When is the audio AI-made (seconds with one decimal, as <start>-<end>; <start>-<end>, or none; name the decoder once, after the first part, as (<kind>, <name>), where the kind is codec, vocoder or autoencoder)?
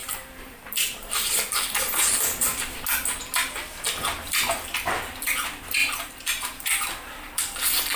0.0-2.8 (vocoder, BigVGAN v2); 5.8-7.4